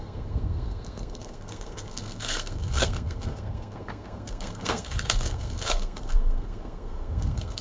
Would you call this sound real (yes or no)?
no